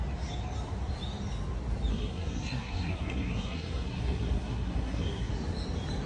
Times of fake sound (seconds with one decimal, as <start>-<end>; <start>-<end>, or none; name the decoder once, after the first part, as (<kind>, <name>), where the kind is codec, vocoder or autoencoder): 1.9-5.3 (codec, SNAC)